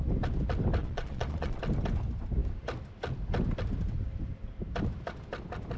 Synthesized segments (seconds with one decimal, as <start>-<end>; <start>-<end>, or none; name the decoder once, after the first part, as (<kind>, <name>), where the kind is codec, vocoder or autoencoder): 0.8-1.6 (vocoder, Vocos)